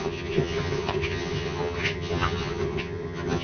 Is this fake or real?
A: fake